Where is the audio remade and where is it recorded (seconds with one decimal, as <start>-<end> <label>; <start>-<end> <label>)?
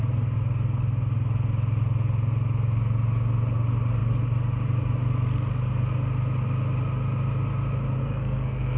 0.0-8.0 recorded; 8.0-8.8 remade